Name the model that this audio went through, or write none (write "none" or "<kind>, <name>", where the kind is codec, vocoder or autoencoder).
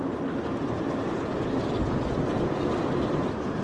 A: none